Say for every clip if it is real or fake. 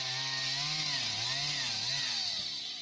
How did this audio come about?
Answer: real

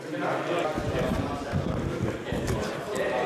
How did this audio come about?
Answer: real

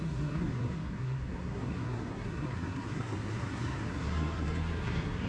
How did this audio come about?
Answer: fake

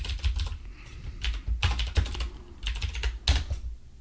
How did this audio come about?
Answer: real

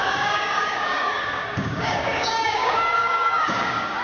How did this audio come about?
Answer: fake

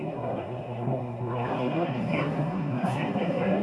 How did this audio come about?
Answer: fake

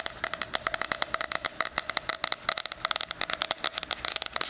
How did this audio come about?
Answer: real